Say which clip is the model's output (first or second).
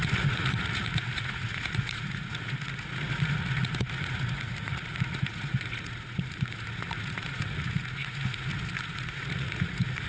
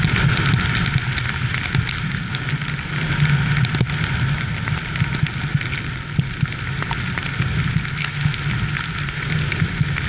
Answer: first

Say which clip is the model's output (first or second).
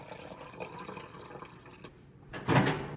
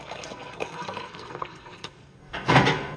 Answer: second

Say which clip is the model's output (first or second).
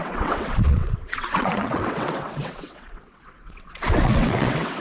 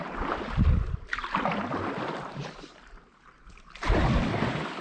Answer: first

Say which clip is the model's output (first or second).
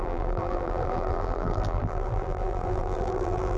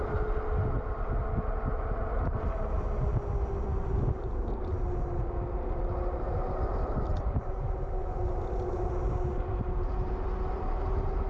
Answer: first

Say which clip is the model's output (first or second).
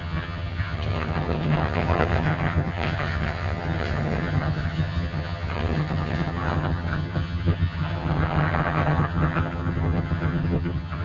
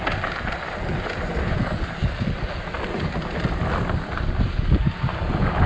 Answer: first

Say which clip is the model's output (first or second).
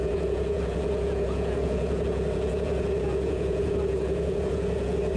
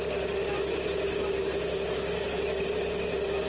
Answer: first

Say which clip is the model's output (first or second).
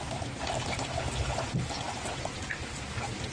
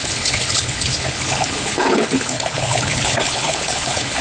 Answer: second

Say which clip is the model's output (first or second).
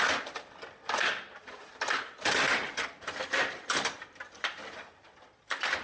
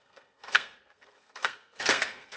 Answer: second